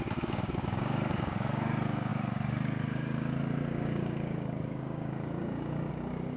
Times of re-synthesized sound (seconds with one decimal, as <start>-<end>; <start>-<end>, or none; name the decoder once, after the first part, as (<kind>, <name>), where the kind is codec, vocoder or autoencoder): 0.0-6.4 (codec, DAC)